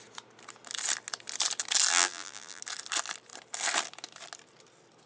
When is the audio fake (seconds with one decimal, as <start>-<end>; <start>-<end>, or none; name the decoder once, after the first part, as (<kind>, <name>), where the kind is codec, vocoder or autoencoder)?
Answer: 1.9-2.6 (vocoder, BigVGAN v2)